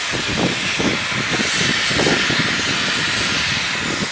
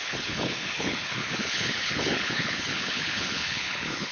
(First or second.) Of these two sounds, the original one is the first